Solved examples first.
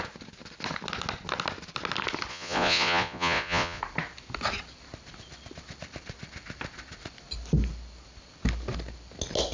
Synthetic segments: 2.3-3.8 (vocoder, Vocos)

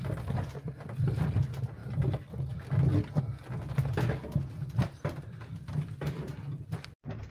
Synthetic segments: none

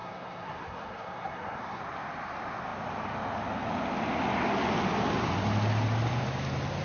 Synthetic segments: 0.0-1.8 (codec, SNAC)